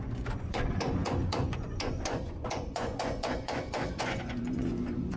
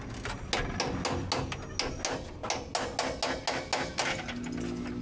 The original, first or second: second